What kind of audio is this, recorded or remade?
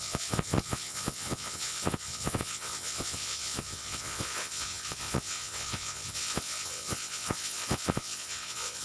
remade